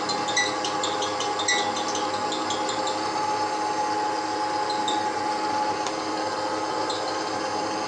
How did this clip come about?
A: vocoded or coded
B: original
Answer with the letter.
B